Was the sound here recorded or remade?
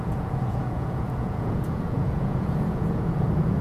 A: remade